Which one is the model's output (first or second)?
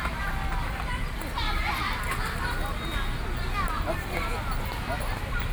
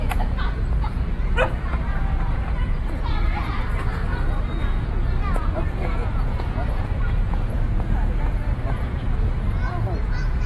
second